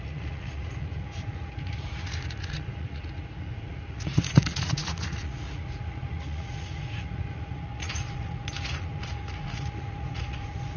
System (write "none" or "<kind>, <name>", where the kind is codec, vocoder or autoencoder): vocoder, Vocos